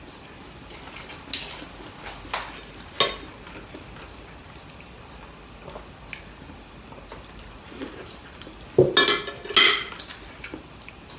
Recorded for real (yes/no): yes